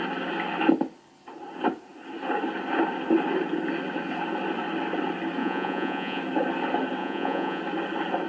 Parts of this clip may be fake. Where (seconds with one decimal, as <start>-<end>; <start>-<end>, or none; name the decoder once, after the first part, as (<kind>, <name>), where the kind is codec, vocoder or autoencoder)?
5.4-6.2 (vocoder, Vocos); 7.0-7.6